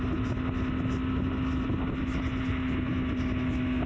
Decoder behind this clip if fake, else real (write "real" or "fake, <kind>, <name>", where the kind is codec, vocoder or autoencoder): real